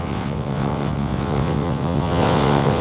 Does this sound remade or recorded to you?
remade